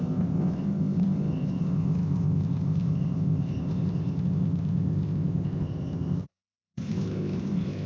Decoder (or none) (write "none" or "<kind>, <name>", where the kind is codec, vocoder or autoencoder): codec, ZipCodec